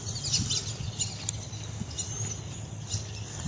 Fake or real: real